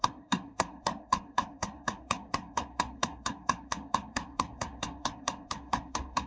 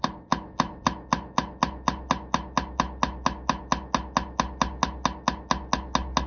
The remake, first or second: first